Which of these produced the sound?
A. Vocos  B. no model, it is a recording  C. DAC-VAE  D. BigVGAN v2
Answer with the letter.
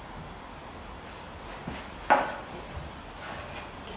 B